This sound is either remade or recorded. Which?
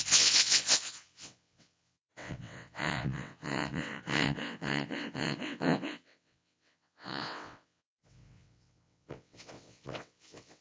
remade